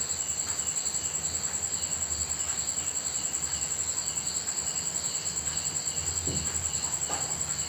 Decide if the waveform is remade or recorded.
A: recorded